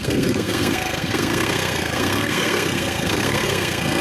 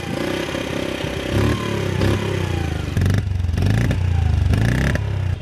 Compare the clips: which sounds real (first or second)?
second